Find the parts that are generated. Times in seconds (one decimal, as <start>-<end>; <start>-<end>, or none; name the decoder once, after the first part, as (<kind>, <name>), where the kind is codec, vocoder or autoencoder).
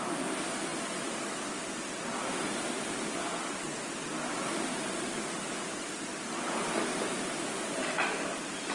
none